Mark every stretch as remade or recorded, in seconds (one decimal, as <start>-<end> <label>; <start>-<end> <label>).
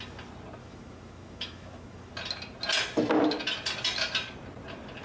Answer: 0.0-0.6 recorded; 0.6-2.1 remade; 2.1-5.0 recorded